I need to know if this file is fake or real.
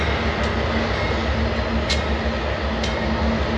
real